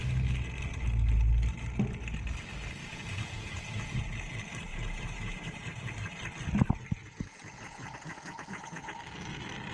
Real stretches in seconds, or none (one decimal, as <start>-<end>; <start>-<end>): 0.0-2.8; 4.0-4.7; 5.9-7.0; 8.9-9.7